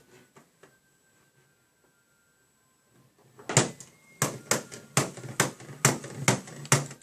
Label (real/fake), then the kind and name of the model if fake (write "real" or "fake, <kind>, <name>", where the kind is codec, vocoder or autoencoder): real